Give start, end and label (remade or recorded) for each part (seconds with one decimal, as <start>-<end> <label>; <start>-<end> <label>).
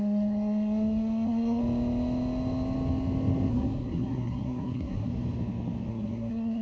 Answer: 0.0-1.6 remade; 1.6-3.5 recorded; 3.5-5.1 remade; 5.1-5.9 recorded; 5.9-6.6 remade